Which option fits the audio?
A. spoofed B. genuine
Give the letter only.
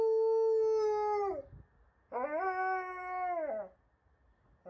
B